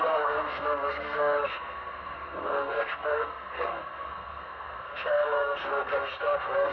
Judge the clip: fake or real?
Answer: fake